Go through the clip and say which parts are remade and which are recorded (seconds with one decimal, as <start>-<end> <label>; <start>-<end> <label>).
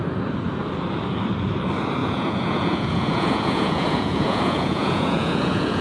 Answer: 0.0-2.0 recorded; 2.0-5.8 remade